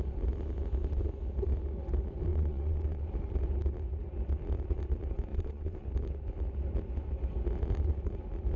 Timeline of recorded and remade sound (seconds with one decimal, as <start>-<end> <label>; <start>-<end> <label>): 0.0-2.3 recorded; 2.3-3.0 remade; 3.0-5.3 recorded; 5.3-5.9 remade; 5.9-8.6 recorded